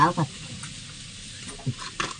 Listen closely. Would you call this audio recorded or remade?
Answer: recorded